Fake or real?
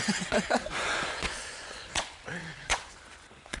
fake